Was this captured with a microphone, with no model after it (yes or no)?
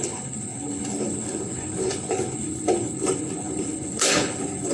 no